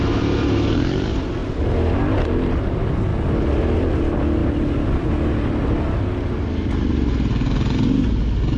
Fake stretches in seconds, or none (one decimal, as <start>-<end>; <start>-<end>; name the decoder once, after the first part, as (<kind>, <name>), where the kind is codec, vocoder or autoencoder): none